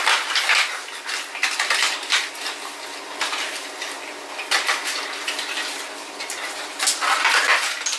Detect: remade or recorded recorded